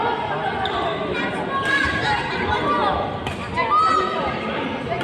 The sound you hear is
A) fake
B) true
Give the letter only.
B